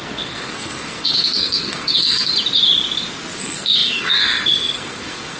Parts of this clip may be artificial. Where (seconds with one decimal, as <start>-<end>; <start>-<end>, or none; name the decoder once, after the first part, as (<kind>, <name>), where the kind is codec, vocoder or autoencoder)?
0.0-2.3 (codec, SNAC); 3.4-5.4